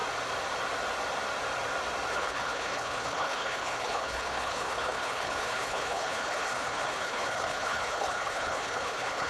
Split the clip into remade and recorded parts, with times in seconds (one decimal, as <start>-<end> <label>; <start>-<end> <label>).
0.0-2.1 recorded; 2.1-9.3 remade